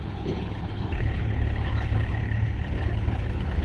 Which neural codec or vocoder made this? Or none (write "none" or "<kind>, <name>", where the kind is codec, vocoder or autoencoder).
codec, HILCodec